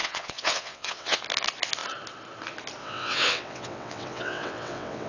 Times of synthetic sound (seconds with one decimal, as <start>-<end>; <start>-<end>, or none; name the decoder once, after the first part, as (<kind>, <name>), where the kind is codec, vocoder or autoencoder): 0.0-1.2 (vocoder, WaveNeXt); 2.8-5.1